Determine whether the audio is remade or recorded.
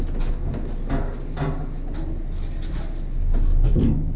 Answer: recorded